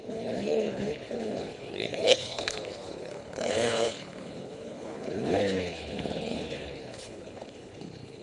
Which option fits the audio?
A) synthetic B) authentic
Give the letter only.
A